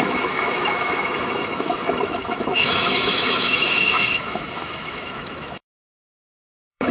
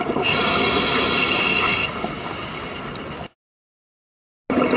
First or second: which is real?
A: second